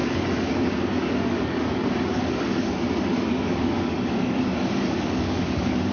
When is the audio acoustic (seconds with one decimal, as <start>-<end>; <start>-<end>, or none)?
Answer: none